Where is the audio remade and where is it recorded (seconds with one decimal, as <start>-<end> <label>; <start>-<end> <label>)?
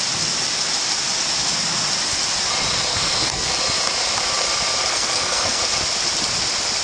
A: 0.0-2.9 recorded; 2.9-3.5 remade; 3.5-4.9 recorded; 4.9-5.6 remade; 5.6-6.8 recorded